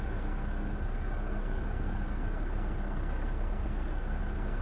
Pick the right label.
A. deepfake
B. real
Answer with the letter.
A